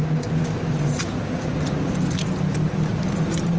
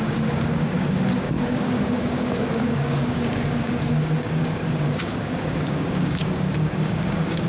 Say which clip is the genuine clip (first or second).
first